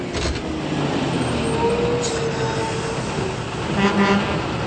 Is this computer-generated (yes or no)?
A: no